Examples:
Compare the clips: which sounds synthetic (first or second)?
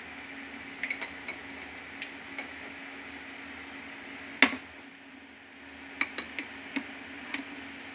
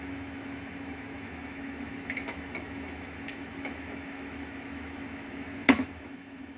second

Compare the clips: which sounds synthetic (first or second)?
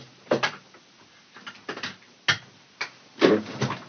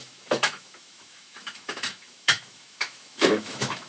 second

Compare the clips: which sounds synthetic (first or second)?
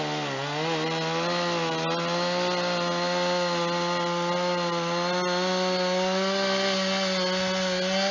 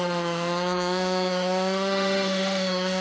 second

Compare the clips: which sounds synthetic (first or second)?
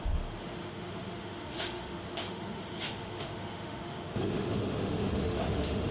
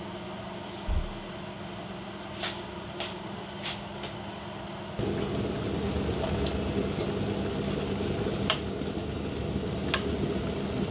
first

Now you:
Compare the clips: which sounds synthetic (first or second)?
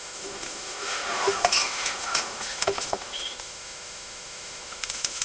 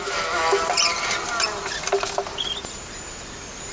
first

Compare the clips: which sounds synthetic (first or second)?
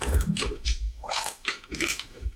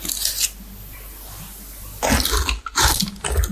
first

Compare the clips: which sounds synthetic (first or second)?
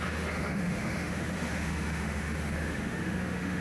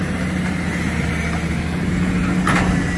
first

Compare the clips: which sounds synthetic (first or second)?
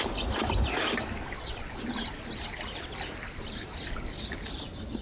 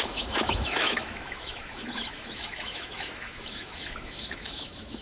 second